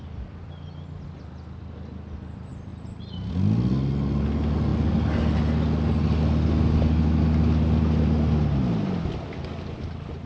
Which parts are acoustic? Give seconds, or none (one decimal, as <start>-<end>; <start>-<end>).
0.0-10.3